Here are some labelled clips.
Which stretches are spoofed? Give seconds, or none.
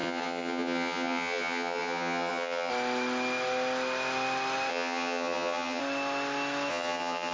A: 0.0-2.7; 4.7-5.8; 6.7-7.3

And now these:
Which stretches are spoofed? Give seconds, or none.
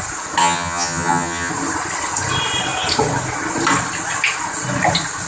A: 0.4-1.5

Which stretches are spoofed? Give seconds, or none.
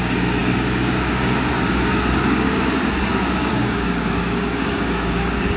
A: 0.0-5.6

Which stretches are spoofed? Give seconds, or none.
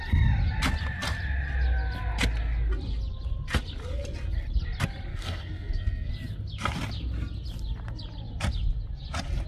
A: 5.1-6.1